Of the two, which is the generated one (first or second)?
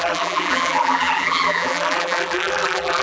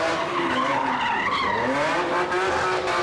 first